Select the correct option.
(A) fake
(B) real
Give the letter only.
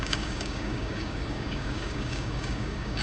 A